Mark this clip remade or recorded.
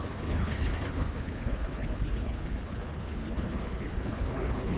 remade